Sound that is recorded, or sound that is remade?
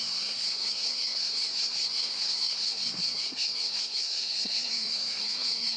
remade